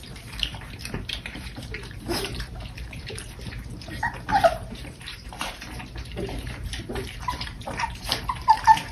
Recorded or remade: remade